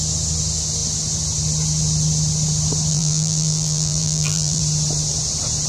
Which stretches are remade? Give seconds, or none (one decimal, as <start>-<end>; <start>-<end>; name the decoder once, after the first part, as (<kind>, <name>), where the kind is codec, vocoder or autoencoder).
2.9-4.6 (vocoder, BigVGAN v2)